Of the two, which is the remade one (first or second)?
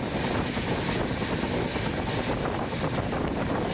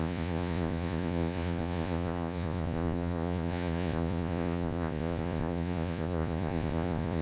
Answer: second